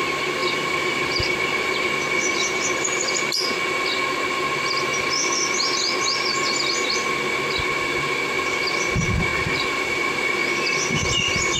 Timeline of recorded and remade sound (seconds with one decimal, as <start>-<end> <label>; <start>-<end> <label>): 0.0-0.4 recorded; 0.4-1.7 remade; 1.7-9.3 recorded; 9.3-10.2 remade; 10.2-11.6 recorded